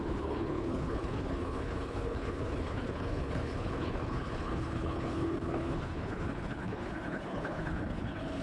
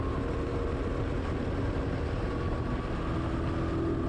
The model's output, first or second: first